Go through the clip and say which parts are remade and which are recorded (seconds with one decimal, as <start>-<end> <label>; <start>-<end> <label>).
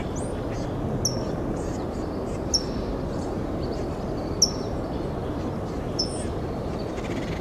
0.0-7.4 recorded